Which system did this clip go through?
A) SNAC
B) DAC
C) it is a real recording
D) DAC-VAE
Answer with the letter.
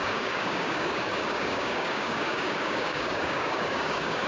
B